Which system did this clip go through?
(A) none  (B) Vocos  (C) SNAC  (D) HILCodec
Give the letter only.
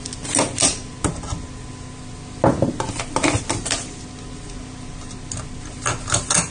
A